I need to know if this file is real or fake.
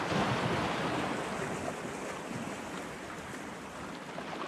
real